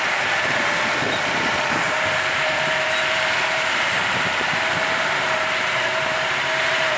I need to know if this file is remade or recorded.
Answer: remade